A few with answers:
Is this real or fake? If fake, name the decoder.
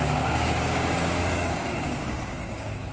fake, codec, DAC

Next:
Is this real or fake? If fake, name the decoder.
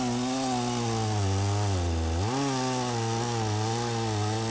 real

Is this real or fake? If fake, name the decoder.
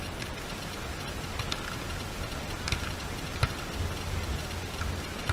real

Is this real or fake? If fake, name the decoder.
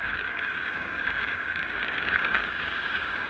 fake, codec, DAC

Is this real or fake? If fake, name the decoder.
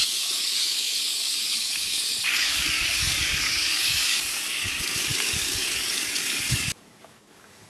fake, codec, DAC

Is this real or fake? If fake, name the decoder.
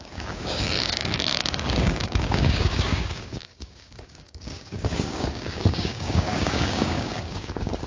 fake, codec, DAC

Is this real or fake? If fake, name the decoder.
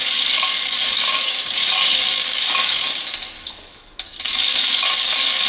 fake, codec, DAC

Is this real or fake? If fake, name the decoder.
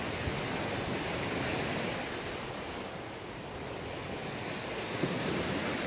real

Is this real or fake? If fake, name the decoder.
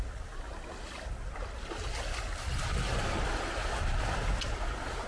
real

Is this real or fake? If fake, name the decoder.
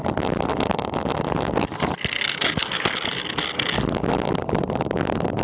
real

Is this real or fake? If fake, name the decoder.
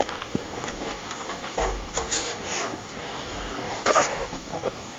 fake, codec, DAC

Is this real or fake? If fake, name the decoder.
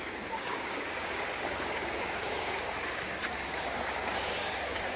fake, codec, DAC